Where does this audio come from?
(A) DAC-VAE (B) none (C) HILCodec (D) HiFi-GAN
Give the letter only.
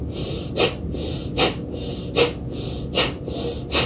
B